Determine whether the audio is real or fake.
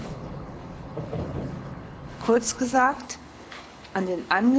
fake